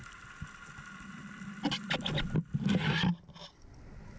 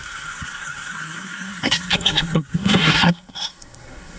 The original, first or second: first